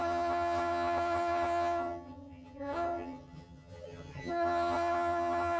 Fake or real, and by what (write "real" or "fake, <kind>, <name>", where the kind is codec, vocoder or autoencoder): fake, vocoder, HiFi-GAN